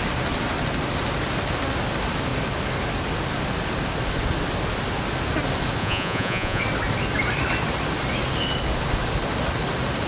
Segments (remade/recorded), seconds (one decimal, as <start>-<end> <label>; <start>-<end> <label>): 0.0-5.8 recorded; 5.8-6.6 remade; 6.6-10.1 recorded